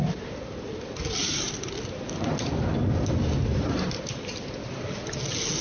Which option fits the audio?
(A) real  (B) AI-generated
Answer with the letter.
A